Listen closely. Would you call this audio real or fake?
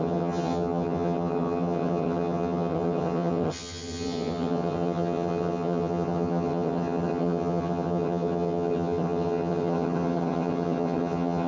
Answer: fake